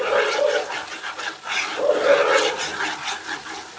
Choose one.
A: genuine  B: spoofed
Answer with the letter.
A